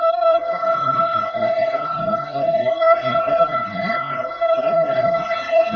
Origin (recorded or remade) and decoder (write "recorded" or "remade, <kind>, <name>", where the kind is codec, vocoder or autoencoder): remade, codec, SNAC